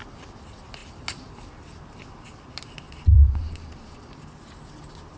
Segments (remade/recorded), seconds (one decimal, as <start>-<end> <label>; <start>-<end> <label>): 0.0-5.2 recorded